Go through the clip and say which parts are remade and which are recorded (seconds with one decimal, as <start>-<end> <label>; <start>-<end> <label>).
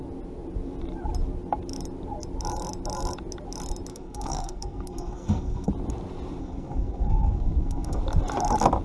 0.0-3.9 recorded; 3.9-5.7 remade; 5.7-6.4 recorded; 6.4-8.0 remade; 8.0-8.8 recorded